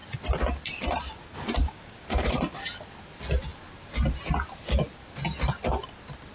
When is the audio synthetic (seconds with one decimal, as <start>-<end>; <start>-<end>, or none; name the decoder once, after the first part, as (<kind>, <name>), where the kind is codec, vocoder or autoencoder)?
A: 1.6-2.3 (codec, DAC)